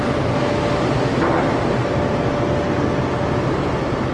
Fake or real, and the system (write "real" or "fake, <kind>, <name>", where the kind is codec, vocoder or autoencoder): real